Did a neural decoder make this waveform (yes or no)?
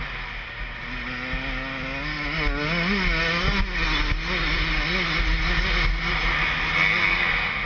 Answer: no